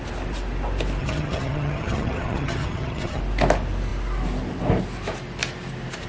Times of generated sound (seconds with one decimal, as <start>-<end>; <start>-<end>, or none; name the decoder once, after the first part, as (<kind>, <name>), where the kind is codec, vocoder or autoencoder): 1.0-3.2 (vocoder, HiFi-GAN)